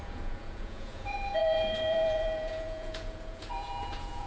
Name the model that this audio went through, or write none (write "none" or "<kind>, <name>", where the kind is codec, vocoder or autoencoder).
vocoder, Vocos